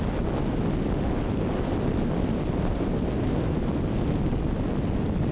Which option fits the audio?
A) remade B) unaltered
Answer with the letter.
B